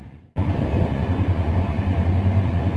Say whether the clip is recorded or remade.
remade